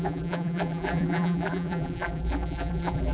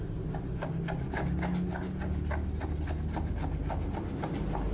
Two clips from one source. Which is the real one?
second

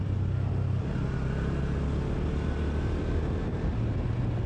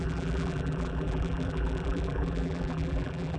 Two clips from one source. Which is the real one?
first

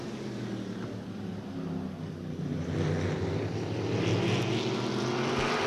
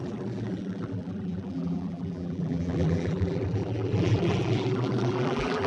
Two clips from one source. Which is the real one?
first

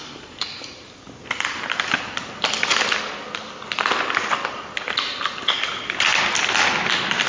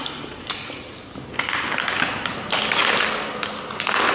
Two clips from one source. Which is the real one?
second